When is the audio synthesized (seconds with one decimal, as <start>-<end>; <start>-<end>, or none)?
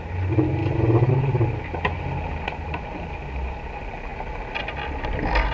0.6-1.1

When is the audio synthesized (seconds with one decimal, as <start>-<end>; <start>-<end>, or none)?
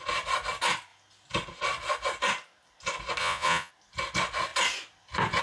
3.2-3.7